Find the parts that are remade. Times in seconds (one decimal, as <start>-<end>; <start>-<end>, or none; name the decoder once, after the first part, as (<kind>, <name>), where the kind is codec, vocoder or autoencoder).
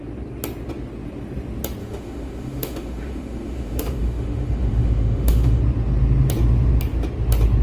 1.8-5.6 (autoencoder, DAC-VAE)